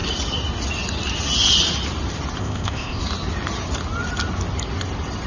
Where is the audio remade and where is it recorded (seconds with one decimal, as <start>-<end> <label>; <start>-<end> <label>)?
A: 0.0-2.4 recorded; 2.4-3.0 remade; 3.0-5.3 recorded